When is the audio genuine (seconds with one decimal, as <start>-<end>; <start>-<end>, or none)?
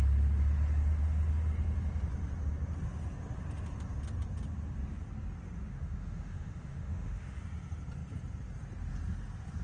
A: 0.0-5.6; 7.4-9.6